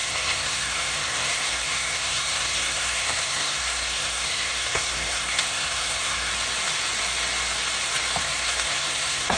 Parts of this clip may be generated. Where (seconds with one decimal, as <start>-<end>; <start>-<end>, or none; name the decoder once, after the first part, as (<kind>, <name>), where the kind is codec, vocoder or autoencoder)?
0.0-6.3 (codec, SNAC); 8.2-9.4